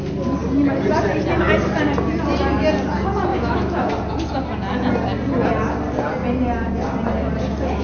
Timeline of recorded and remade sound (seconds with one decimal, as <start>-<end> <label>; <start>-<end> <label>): 0.0-3.3 recorded; 3.3-3.9 remade; 3.9-7.8 recorded